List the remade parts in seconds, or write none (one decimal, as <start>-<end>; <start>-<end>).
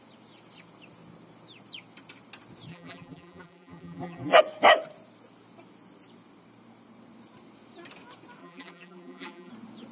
2.7-4.4; 8.4-9.5